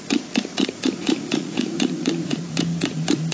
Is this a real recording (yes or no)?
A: no